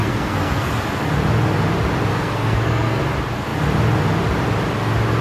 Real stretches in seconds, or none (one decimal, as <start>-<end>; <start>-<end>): 0.7-2.1; 3.0-5.2